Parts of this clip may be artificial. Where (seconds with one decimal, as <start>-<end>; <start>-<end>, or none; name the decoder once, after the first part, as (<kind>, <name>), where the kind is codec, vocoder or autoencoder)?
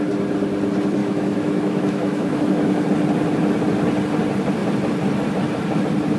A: 1.0-2.8 (autoencoder, DAC-VAE)